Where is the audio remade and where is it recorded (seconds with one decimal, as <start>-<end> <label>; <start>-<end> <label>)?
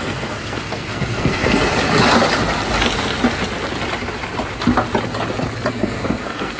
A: 0.0-1.7 remade; 1.7-5.7 recorded; 5.7-6.6 remade